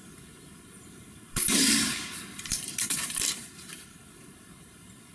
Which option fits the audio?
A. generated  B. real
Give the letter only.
A